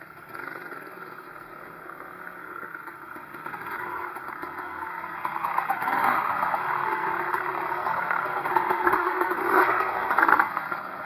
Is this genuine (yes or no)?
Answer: no